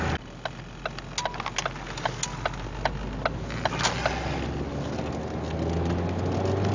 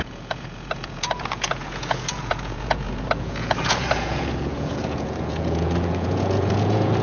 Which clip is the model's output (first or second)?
second